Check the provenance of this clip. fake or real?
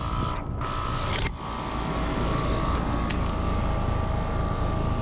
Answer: real